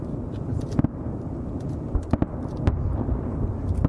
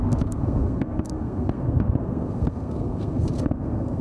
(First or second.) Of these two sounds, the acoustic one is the first